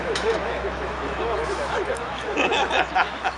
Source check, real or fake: fake